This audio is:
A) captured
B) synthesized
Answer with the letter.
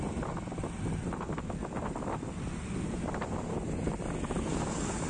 A